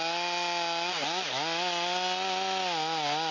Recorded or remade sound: recorded